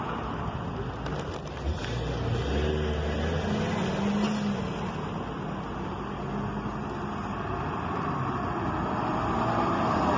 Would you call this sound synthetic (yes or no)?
no